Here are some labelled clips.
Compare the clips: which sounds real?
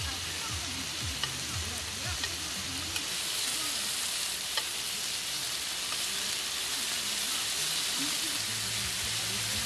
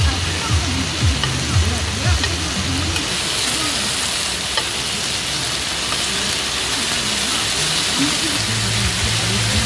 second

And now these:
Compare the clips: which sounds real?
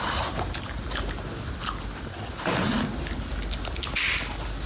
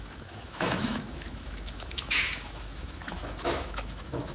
first